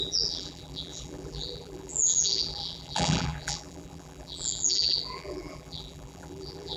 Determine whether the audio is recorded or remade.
remade